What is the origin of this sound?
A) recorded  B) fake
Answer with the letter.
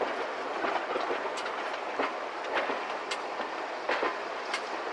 A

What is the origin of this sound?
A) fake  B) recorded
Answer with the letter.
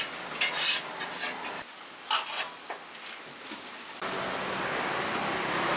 B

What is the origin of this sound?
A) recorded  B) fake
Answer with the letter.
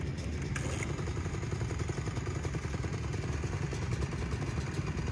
A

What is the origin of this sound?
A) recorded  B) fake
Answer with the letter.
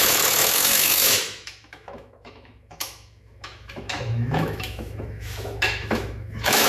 B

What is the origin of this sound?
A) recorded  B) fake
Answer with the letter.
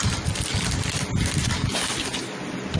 A